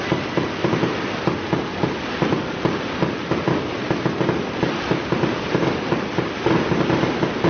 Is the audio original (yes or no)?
yes